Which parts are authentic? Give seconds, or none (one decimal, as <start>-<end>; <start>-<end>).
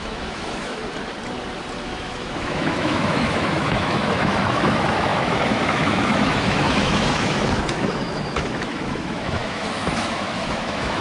0.8-1.8